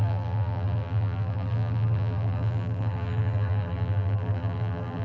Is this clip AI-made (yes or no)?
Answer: yes